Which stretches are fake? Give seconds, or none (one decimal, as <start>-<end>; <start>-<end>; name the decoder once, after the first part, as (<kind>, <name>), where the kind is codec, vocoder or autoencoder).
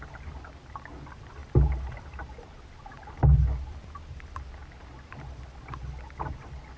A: none